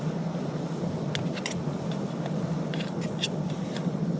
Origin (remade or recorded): recorded